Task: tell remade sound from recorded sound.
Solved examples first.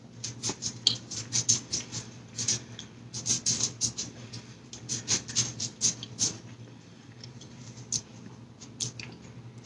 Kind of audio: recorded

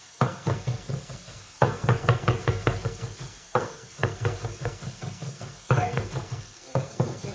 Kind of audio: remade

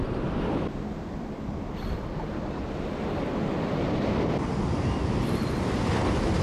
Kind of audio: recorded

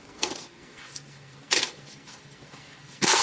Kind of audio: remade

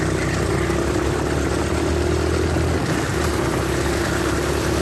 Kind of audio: recorded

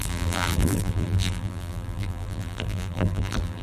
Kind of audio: remade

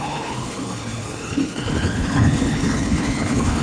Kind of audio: remade